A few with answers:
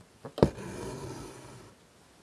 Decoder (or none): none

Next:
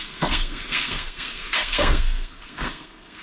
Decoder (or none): codec, SNAC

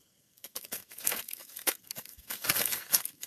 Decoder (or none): codec, SNAC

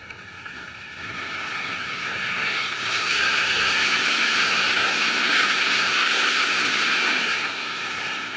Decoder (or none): codec, SNAC